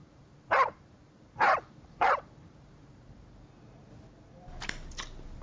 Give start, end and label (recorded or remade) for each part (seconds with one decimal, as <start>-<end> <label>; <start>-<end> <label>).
0.0-3.2 remade; 3.2-5.4 recorded